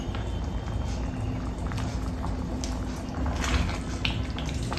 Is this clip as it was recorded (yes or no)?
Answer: yes